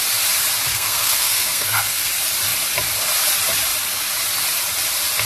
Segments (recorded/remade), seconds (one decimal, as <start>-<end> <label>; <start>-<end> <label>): 0.0-0.7 recorded; 0.7-2.1 remade; 2.1-5.3 recorded